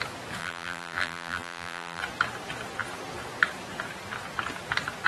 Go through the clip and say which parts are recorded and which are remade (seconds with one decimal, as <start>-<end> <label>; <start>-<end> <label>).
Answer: 0.0-0.4 recorded; 0.4-2.0 remade; 2.0-5.1 recorded